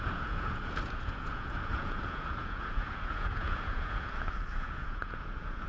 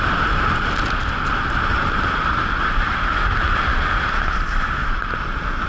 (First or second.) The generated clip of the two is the first